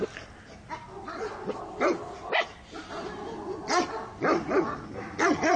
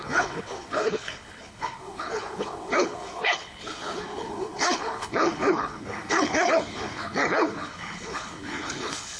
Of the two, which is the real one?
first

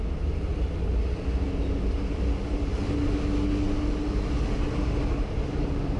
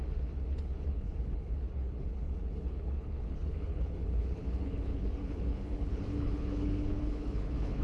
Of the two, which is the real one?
first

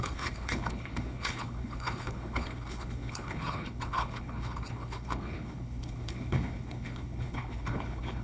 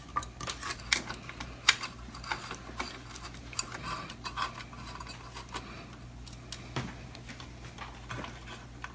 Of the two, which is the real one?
second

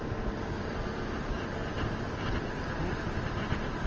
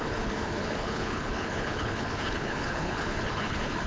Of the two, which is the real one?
first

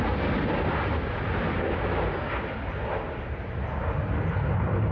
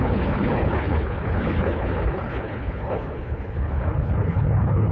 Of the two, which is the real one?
first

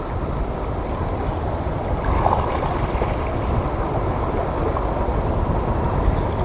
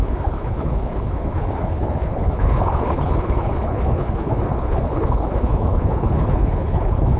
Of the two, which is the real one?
first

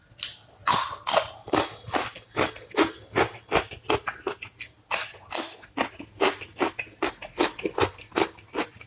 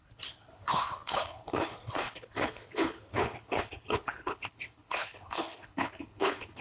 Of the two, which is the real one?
first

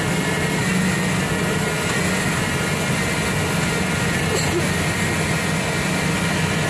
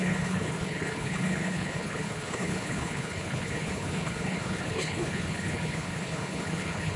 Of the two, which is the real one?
first